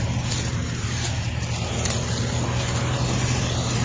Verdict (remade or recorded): recorded